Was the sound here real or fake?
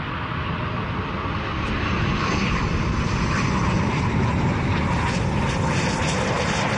real